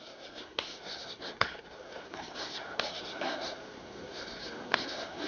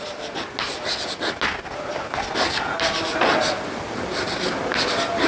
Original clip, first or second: second